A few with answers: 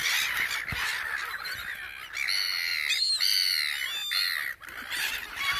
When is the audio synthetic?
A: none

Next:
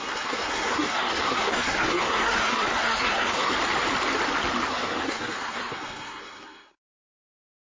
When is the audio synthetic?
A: 0.0-3.5 (codec, SNAC); 4.7-7.8

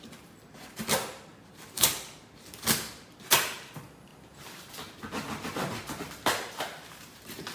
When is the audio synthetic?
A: 1.3-1.9 (vocoder, BigVGAN v2)

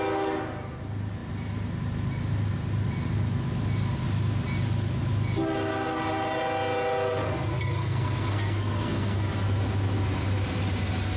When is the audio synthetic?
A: 7.5-9.3 (codec, SNAC)

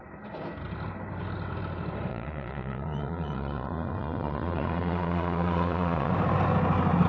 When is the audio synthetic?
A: 2.1-6.1 (vocoder, Vocos)

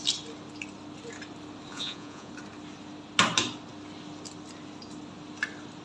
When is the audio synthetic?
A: 1.7-2.3 (vocoder, Vocos)

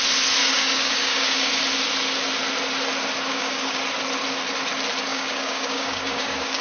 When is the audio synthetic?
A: 0.4-1.5 (codec, DAC); 3.3-3.8; 5.1-6.6